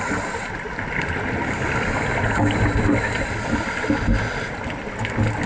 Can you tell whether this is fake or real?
real